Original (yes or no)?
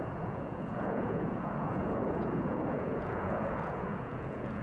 no